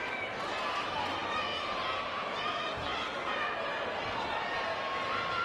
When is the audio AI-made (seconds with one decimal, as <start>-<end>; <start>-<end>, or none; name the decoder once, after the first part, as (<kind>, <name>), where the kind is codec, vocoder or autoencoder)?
none